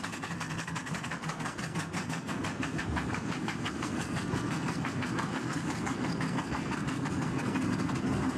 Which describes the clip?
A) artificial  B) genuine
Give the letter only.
A